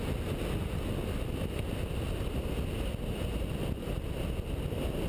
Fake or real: real